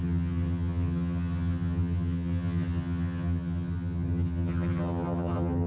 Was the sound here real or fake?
fake